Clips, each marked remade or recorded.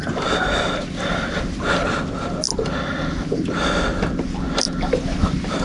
recorded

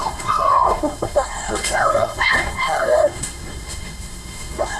remade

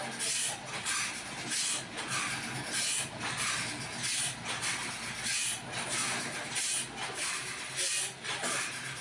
recorded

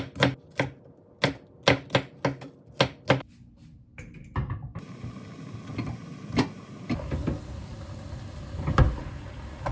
recorded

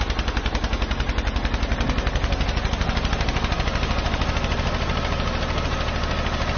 recorded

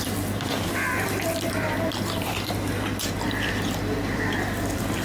remade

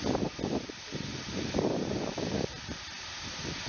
remade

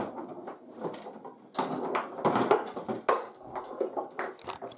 recorded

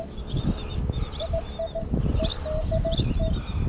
recorded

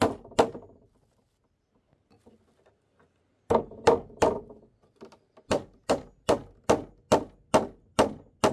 recorded